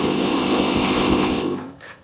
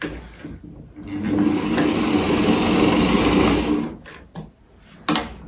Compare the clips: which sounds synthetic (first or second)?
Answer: first